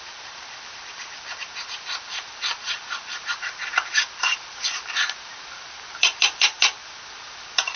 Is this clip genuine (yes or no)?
no